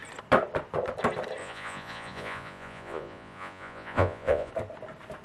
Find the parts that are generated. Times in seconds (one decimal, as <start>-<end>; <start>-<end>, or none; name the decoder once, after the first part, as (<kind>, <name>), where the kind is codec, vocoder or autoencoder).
1.4-4.5 (vocoder, Vocos)